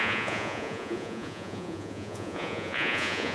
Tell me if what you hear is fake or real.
fake